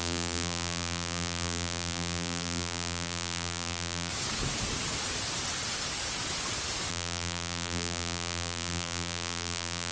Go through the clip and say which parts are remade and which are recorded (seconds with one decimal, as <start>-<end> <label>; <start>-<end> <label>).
0.0-4.1 remade; 4.1-6.9 recorded; 6.9-9.9 remade